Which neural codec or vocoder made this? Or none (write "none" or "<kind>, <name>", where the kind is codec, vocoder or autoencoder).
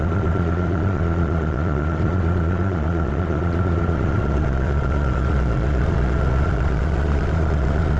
vocoder, Vocos